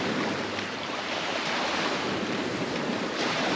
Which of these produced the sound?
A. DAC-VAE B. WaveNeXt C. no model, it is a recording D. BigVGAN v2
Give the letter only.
D